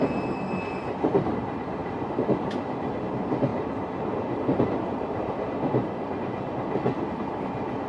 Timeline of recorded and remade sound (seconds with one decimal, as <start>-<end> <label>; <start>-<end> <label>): 0.0-7.9 recorded